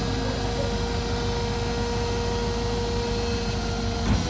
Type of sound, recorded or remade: recorded